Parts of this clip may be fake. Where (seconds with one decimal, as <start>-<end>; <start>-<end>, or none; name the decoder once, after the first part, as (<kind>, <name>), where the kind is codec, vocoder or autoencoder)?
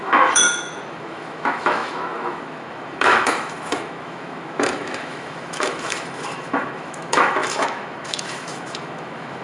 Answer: 0.0-9.4 (autoencoder, DAC-VAE)